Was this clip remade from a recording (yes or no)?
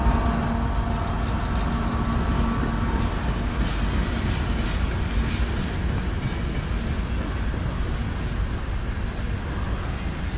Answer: no